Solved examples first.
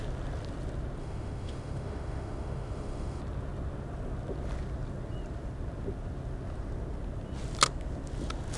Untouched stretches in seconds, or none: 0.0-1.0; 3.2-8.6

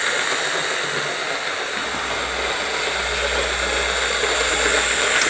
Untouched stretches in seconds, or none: 0.0-5.3

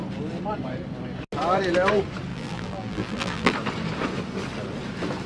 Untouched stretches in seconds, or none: 0.0-2.3; 3.5-5.3

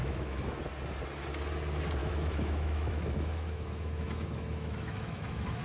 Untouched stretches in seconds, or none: 0.6-2.0